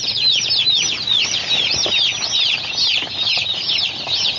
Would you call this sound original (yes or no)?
yes